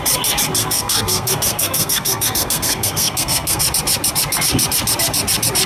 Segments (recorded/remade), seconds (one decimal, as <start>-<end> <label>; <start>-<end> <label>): 0.0-0.6 recorded; 0.6-3.6 remade; 3.6-5.7 recorded